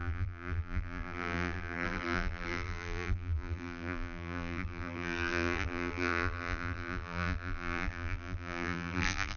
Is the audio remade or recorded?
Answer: remade